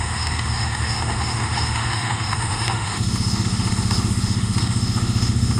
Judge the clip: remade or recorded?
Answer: remade